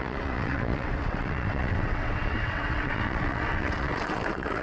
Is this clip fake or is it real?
fake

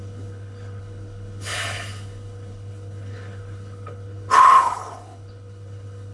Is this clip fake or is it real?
fake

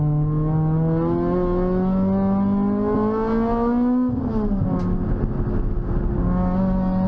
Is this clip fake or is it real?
real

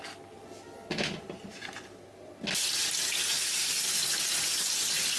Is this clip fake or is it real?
real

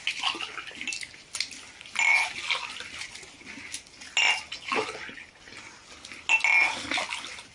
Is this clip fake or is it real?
real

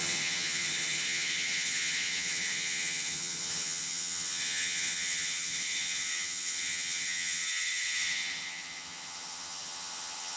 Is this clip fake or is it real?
fake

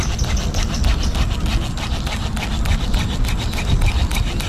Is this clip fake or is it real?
real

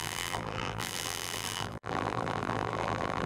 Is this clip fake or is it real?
fake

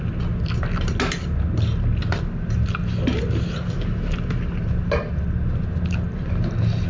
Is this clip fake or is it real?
real